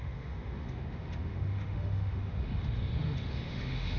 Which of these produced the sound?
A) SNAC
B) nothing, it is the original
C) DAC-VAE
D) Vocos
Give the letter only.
C